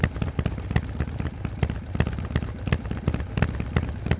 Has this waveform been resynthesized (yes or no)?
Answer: no